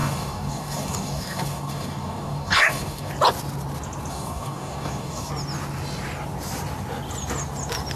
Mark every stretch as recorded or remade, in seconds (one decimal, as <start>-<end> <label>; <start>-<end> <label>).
0.0-3.1 remade; 3.1-4.1 recorded; 4.1-5.3 remade; 5.3-8.0 recorded